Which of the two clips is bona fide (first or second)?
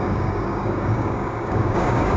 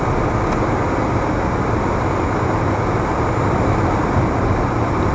second